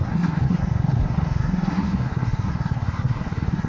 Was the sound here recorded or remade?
remade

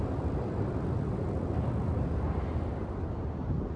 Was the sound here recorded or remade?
recorded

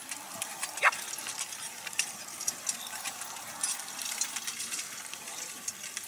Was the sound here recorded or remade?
recorded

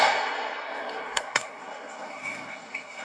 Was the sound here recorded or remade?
remade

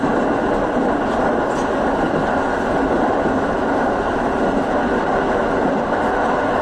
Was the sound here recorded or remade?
recorded